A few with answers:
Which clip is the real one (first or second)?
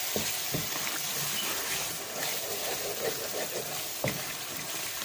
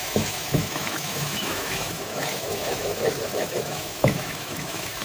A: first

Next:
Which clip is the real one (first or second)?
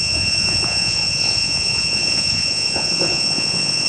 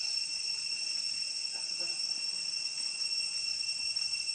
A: second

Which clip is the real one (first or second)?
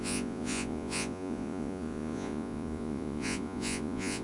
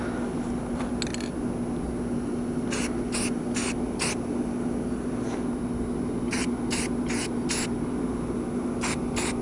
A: second